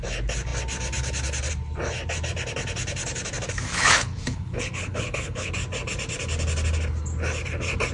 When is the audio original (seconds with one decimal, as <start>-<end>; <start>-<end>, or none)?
0.0-3.7; 5.5-7.9